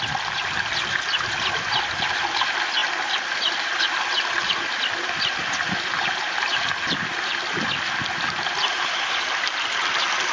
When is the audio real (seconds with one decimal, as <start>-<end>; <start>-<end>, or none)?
0.0-10.3